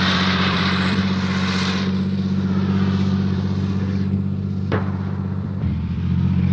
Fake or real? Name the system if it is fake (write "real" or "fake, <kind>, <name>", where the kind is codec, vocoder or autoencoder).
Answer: fake, vocoder, BigVGAN v2